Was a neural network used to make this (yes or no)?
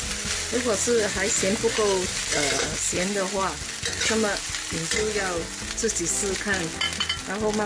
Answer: no